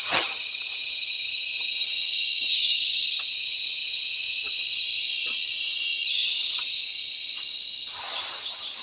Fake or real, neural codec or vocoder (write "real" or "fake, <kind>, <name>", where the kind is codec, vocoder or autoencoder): fake, vocoder, HiFi-GAN